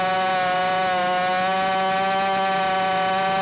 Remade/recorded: recorded